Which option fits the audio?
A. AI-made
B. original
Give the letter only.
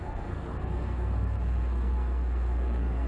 A